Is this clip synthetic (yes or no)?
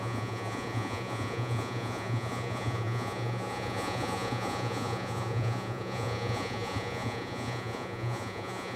yes